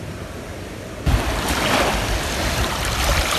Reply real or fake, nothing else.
real